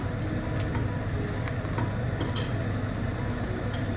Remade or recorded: recorded